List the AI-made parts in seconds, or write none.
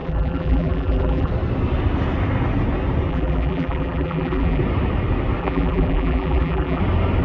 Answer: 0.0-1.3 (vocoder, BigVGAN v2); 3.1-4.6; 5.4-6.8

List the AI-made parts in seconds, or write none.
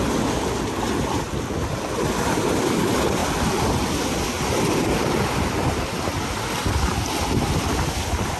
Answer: 3.2-4.2 (vocoder, BigVGAN v2)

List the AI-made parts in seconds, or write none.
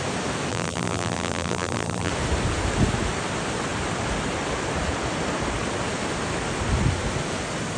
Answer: 0.5-2.1 (vocoder, BigVGAN v2)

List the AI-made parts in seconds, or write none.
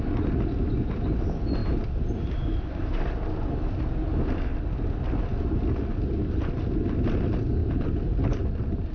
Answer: 1.6-3.0 (vocoder, BigVGAN v2); 7.6-8.4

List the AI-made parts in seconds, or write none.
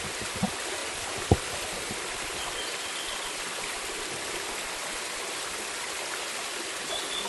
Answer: 0.8-5.2 (vocoder, BigVGAN v2)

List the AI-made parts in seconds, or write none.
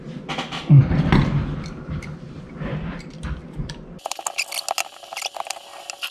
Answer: 0.8-4.5 (vocoder, BigVGAN v2)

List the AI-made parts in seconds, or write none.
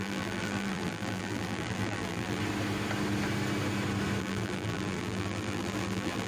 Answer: 0.0-2.4 (vocoder, BigVGAN v2); 4.2-6.3